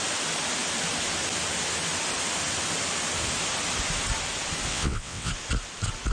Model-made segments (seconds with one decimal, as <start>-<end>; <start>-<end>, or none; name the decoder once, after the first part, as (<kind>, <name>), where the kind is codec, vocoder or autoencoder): 4.7-5.3 (vocoder, WaveNeXt)